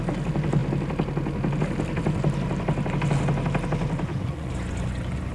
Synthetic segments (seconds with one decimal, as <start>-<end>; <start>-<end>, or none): 4.1-5.3